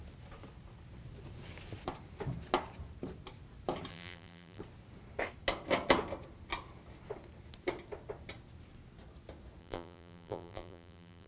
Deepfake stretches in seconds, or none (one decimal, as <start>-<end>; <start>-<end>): 3.9-4.6; 9.6-11.3